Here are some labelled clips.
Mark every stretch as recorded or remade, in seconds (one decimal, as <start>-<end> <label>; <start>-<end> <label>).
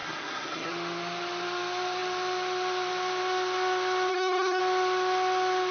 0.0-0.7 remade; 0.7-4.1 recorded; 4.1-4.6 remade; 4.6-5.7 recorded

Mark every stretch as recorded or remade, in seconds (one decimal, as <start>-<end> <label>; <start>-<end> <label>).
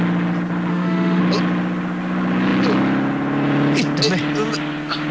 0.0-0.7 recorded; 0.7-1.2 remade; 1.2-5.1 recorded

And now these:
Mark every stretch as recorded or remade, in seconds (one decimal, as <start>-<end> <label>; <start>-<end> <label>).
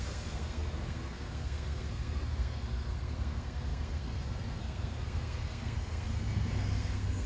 0.0-7.3 remade